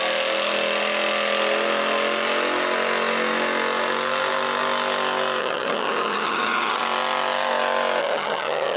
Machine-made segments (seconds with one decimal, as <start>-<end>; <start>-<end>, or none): 5.4-6.8; 8.0-8.8